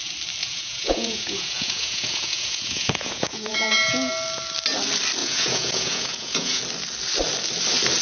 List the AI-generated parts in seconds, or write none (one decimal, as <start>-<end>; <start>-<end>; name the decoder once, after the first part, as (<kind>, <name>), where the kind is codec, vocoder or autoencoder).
0.4-4.1 (vocoder, Vocos); 5.2-6.6